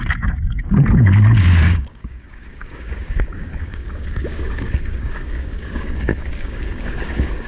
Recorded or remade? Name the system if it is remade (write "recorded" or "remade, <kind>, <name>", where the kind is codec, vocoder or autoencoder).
remade, codec, DAC